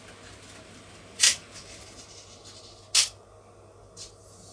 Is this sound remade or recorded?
recorded